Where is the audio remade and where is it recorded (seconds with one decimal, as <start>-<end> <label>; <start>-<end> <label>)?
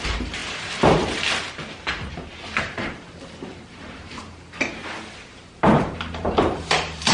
0.0-0.4 remade; 0.4-2.6 recorded; 2.6-4.8 remade; 4.8-5.3 recorded; 5.3-7.1 remade